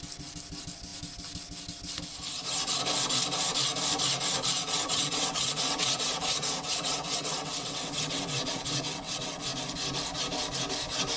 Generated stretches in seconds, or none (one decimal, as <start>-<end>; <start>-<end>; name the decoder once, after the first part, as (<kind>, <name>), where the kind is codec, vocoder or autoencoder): 4.6-9.4 (vocoder, WaveNeXt)